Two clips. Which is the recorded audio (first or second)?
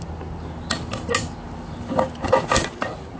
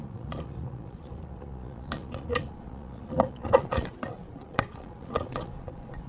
first